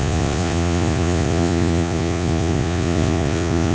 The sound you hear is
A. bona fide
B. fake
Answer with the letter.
B